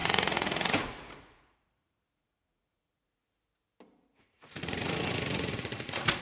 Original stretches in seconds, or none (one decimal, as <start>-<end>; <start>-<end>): 3.3-4.1